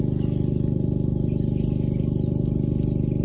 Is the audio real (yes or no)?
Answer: yes